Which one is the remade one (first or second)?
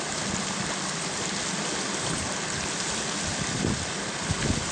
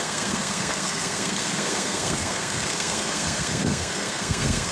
second